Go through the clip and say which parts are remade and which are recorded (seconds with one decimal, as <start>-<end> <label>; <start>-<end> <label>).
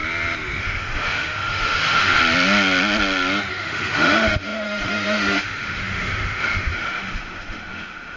0.0-0.6 recorded; 0.6-2.2 remade; 2.2-3.5 recorded; 3.5-8.2 remade